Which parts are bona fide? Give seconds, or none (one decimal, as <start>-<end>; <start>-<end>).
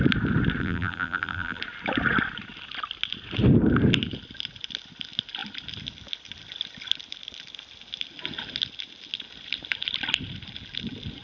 0.0-0.6; 1.6-11.2